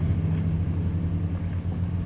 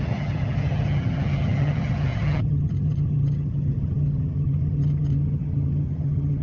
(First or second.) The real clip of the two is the first